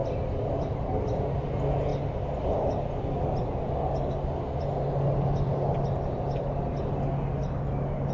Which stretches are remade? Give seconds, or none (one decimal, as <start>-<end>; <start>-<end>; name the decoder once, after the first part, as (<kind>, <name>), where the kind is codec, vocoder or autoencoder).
none